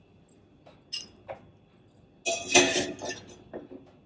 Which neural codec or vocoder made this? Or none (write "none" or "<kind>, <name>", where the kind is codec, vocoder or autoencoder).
none